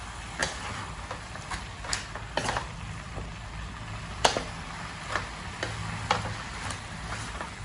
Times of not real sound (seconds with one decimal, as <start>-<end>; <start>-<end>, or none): 0.0-3.3